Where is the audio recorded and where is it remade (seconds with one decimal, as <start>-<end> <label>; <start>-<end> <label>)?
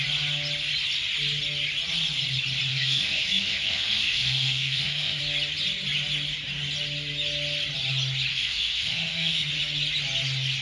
0.0-2.7 recorded; 2.7-5.2 remade; 5.2-8.3 recorded; 8.3-9.5 remade; 9.5-10.6 recorded